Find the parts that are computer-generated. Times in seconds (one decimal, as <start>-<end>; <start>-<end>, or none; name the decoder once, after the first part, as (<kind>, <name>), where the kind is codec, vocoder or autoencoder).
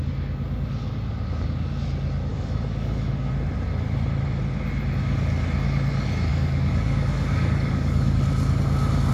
2.3-3.3 (codec, DAC); 6.3-8.2